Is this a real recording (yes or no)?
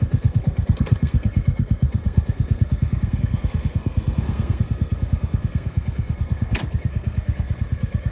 no